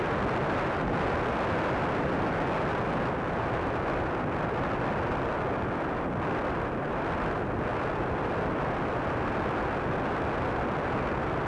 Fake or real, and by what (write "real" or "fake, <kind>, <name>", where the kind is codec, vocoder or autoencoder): real